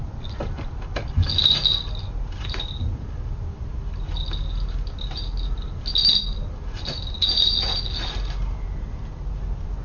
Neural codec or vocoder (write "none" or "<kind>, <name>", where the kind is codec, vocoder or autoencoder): none